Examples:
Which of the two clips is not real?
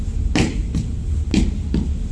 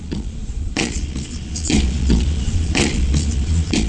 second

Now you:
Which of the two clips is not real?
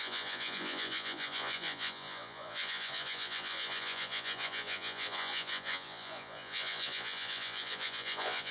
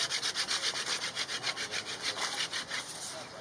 first